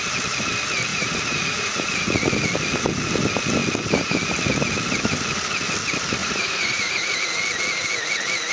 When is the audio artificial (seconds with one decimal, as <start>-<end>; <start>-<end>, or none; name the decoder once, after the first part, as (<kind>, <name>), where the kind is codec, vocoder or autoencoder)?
0.9-2.3 (vocoder, Vocos); 6.2-7.2